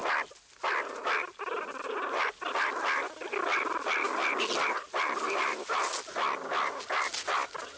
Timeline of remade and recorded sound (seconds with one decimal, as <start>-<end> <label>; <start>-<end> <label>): 0.0-7.8 recorded